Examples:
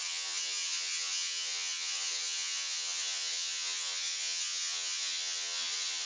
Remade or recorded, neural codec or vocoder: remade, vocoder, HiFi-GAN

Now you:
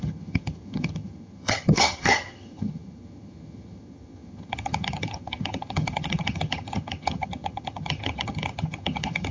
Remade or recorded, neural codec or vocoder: remade, vocoder, HiFi-GAN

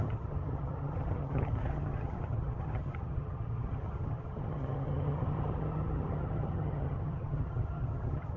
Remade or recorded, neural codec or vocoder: remade, vocoder, HiFi-GAN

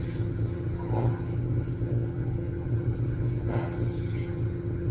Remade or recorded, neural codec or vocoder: remade, vocoder, HiFi-GAN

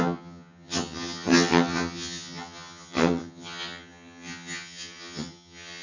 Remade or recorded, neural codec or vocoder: remade, vocoder, HiFi-GAN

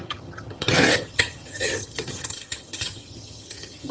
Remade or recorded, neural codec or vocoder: remade, vocoder, HiFi-GAN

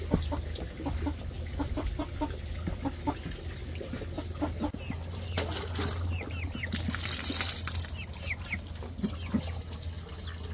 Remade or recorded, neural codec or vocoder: recorded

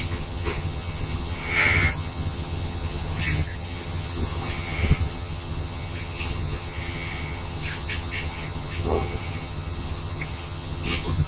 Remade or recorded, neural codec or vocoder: remade, vocoder, HiFi-GAN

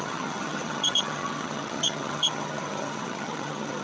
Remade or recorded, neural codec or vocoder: remade, vocoder, HiFi-GAN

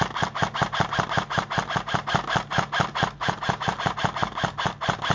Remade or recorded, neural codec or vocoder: recorded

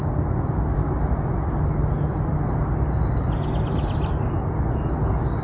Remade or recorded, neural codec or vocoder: recorded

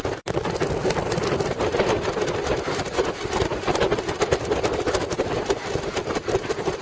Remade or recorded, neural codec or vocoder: recorded